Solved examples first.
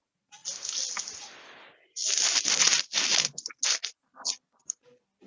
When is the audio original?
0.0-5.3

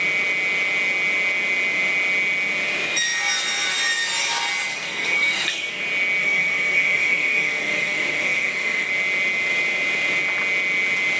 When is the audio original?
0.0-4.7; 5.8-6.2; 8.9-11.2

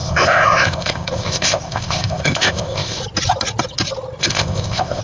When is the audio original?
3.0-4.2